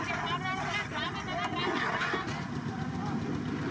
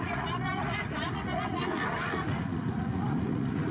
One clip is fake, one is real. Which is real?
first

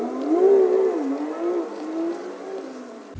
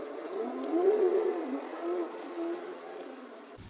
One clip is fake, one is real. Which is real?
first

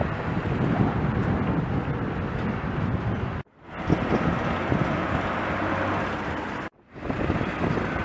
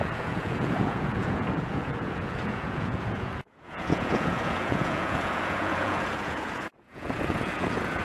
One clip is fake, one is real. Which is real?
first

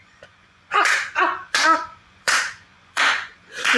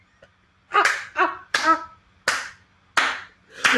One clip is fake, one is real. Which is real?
second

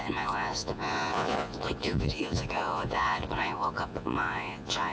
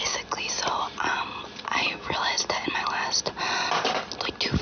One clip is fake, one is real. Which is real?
second